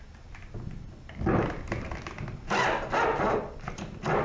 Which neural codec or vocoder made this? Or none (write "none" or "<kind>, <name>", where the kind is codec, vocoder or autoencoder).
none